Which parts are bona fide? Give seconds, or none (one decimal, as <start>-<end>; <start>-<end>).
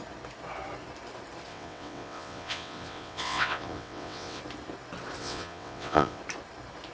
0.0-1.5; 4.4-5.2; 6.2-6.9